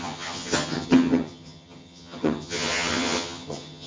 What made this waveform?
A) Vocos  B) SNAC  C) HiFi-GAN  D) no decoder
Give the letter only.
C